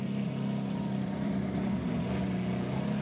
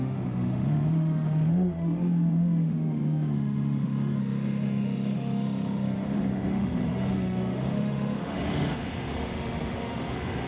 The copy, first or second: second